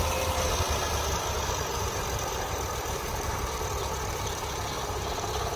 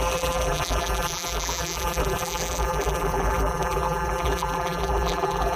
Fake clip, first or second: second